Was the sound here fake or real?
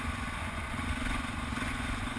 fake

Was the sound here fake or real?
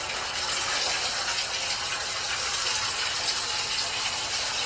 real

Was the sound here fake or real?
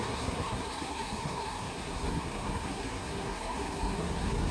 fake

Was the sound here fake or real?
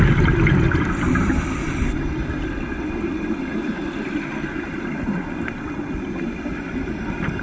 real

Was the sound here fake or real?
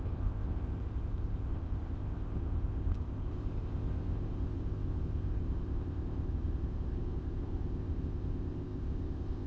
fake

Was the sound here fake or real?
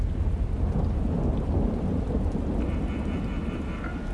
real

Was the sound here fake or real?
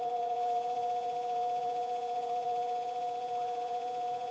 fake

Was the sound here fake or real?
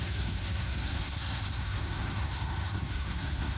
fake